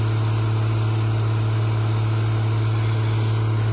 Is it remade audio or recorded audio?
recorded